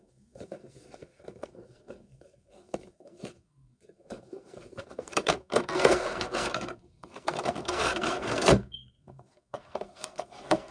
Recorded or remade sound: remade